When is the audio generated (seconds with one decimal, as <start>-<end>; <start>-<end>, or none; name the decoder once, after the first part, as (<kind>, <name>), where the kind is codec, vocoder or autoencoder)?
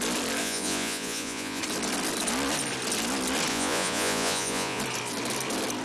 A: 0.4-1.6 (vocoder, Vocos); 3.5-4.8